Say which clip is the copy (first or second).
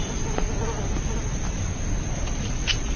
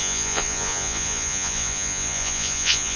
second